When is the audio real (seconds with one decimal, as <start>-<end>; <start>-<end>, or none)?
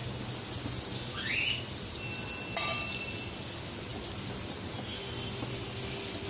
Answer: 0.0-6.3